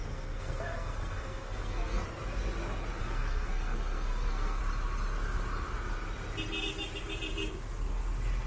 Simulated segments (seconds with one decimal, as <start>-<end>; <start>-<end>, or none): 0.0-2.0; 3.0-4.6